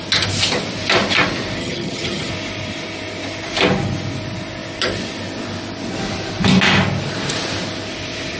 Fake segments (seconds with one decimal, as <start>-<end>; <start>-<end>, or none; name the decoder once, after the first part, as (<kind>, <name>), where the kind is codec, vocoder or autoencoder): 1.6-2.3 (vocoder, HiFi-GAN)